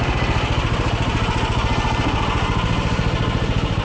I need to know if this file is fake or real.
fake